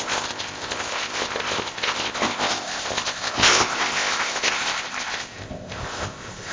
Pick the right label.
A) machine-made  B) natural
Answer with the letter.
A